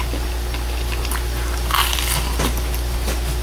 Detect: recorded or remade recorded